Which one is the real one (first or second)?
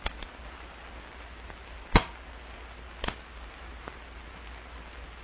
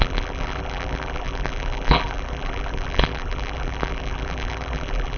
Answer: first